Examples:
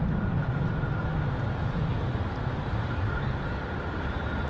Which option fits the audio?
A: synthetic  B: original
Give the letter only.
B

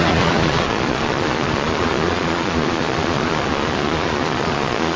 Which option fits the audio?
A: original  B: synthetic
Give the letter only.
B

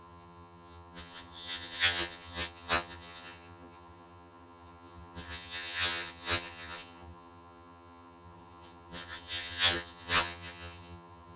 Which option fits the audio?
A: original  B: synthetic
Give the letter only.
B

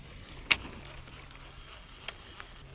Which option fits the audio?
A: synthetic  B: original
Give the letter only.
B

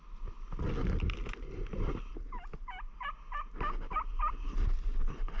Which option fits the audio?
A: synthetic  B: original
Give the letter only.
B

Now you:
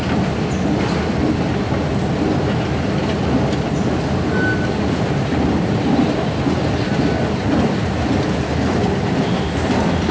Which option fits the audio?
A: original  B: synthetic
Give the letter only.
A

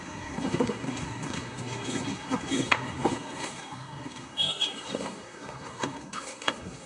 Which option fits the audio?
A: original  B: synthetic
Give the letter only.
B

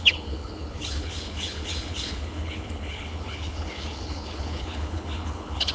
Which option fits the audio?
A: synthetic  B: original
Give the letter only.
A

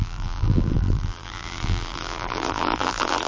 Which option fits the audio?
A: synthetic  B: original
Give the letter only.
A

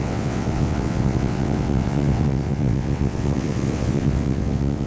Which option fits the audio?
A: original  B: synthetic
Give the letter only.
B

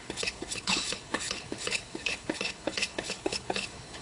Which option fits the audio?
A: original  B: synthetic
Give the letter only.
B